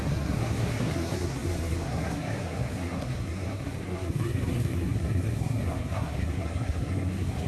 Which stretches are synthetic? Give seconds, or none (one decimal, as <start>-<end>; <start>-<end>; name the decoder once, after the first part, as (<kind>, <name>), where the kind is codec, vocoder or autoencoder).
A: 0.0-7.5 (codec, SNAC)